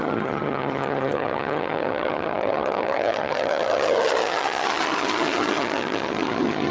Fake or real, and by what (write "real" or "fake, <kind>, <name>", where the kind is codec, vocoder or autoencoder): fake, vocoder, HiFi-GAN